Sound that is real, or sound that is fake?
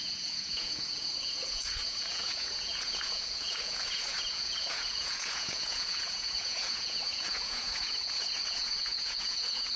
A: fake